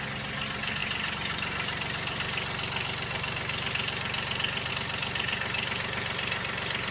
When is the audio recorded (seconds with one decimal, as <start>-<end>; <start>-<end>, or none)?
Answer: 0.0-6.9